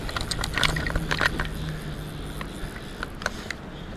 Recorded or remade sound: recorded